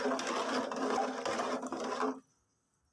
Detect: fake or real real